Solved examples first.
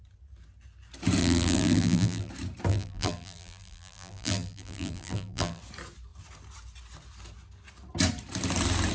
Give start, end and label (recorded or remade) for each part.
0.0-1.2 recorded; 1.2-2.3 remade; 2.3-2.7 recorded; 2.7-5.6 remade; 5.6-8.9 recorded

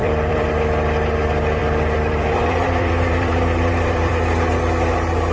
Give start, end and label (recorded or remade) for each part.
0.0-0.5 remade; 0.5-1.6 recorded; 1.6-4.1 remade; 4.1-5.3 recorded